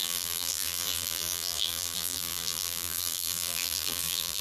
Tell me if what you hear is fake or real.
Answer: fake